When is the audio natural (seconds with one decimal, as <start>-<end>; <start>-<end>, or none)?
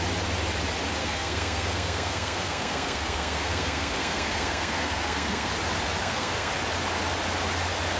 0.0-1.0; 5.5-6.0; 6.5-8.0